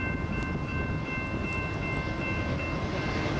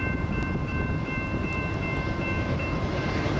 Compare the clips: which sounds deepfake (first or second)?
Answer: second